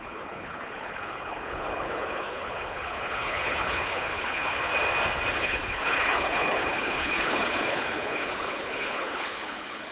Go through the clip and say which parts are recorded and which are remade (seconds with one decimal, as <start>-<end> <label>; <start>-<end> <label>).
0.0-4.7 remade; 4.7-5.4 recorded; 5.4-9.9 remade